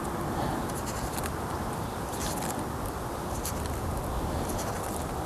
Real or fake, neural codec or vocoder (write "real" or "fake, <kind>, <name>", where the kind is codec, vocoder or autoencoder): real